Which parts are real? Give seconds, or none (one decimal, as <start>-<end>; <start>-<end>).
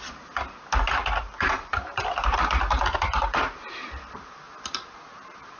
0.0-1.0; 4.4-5.6